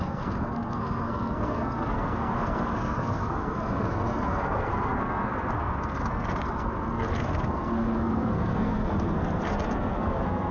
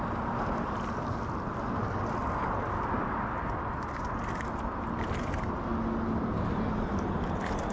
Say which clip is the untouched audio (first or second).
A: second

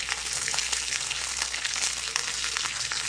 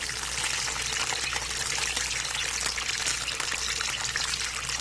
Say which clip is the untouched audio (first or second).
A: second